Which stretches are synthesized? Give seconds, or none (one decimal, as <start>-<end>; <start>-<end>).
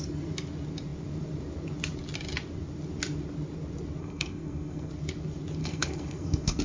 4.0-4.9; 5.6-6.6